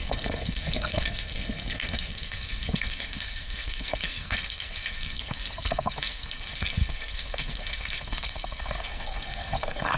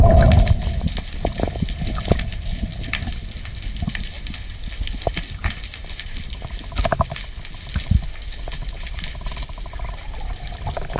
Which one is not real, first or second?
first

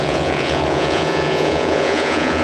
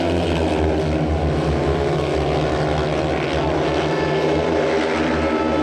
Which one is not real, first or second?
first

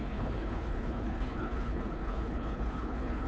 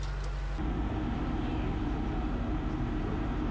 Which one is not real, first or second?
first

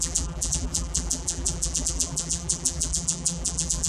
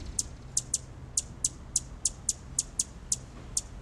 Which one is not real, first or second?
first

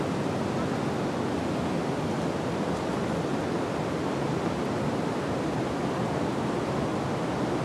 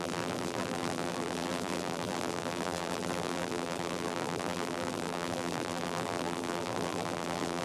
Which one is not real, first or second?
second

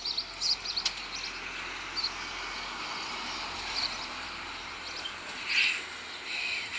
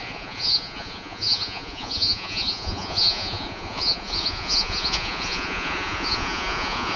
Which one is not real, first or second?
second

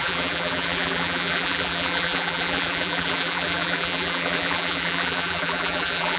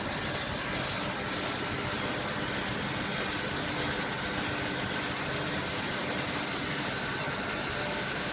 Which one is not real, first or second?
first